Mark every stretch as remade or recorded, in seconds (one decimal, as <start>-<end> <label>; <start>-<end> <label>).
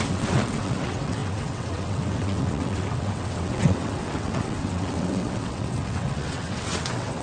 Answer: 0.0-7.2 remade